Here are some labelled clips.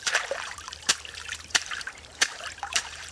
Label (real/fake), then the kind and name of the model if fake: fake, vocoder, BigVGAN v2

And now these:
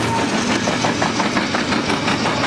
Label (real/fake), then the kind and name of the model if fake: real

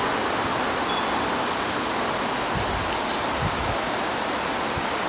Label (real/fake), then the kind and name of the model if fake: real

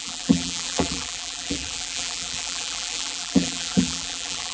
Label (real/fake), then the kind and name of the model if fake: fake, vocoder, BigVGAN v2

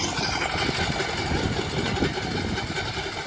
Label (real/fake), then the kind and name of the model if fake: real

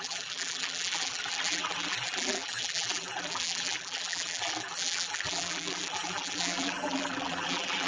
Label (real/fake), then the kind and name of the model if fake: fake, vocoder, BigVGAN v2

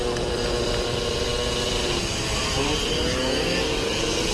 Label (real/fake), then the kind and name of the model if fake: real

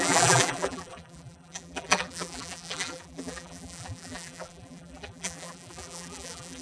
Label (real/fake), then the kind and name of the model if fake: fake, vocoder, BigVGAN v2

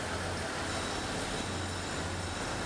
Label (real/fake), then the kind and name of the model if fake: real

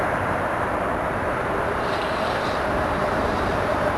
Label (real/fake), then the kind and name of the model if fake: fake, vocoder, BigVGAN v2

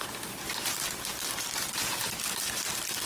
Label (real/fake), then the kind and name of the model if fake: real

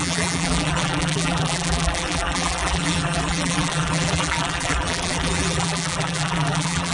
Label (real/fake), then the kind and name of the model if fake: fake, vocoder, BigVGAN v2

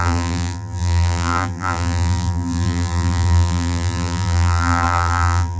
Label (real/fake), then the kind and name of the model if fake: fake, vocoder, BigVGAN v2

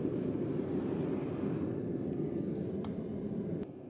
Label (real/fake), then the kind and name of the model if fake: real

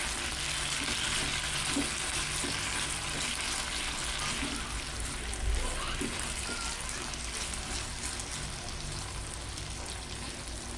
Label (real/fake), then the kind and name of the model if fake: real